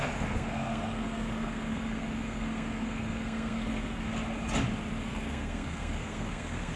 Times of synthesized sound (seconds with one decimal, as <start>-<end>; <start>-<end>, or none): 0.0-4.1; 5.0-6.8